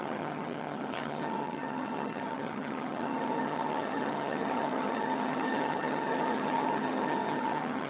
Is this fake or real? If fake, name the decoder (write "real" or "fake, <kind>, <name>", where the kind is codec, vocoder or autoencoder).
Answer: fake, vocoder, HiFi-GAN